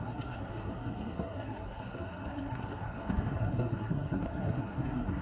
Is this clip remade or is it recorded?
remade